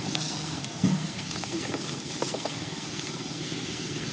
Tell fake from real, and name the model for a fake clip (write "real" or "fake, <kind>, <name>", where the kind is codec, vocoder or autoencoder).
fake, codec, SNAC